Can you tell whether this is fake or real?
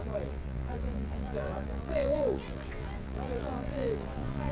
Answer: fake